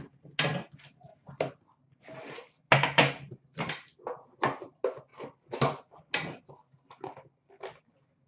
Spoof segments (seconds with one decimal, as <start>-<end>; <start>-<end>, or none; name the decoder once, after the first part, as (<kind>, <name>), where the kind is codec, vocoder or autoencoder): none